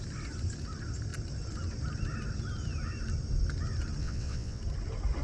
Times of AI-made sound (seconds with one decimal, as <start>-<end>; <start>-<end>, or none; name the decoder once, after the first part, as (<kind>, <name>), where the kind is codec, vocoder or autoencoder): 4.0-4.6 (vocoder, WaveNeXt)